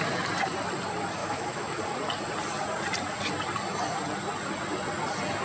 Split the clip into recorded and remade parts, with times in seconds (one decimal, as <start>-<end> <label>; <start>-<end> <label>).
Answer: 0.0-1.2 recorded; 1.2-1.8 remade; 1.8-5.4 recorded